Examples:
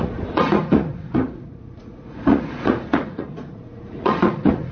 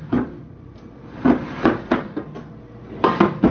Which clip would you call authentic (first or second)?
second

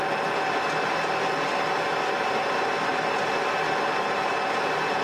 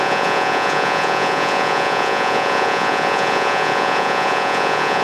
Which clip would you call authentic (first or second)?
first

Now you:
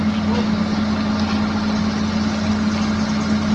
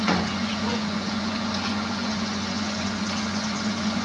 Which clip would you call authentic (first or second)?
first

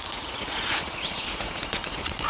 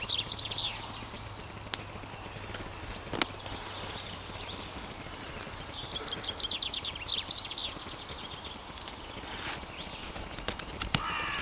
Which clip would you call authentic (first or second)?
second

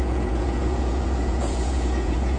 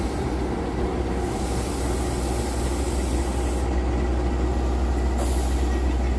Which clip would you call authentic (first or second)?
second